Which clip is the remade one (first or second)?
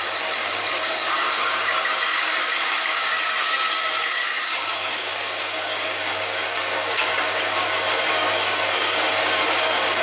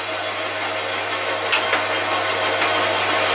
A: first